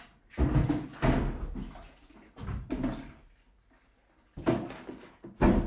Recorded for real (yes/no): yes